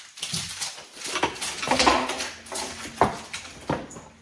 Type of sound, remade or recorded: recorded